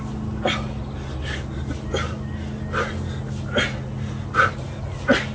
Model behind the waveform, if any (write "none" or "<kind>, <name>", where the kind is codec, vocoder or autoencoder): none